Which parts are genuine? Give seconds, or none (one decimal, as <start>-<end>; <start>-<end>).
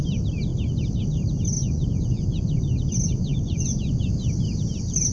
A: 0.0-1.6; 4.1-5.1